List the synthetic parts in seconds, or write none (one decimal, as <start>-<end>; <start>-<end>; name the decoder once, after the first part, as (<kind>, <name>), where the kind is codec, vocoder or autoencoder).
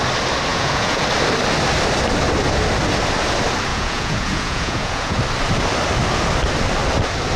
0.5-1.0 (vocoder, Vocos); 3.7-5.2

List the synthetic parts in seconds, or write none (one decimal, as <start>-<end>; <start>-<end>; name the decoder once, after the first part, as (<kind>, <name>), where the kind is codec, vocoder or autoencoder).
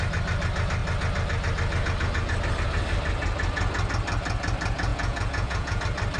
4.9-5.8 (vocoder, Vocos)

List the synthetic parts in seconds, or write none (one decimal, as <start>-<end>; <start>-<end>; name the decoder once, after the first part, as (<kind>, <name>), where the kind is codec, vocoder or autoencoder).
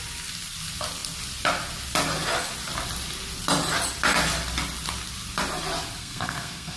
6.0-6.8 (codec, SNAC)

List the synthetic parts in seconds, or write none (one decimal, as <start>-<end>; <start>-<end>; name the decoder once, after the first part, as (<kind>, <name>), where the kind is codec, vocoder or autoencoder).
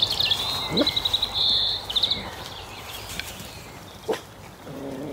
1.4-4.1 (vocoder, BigVGAN v2)